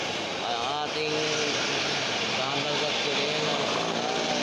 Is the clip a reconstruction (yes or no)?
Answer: no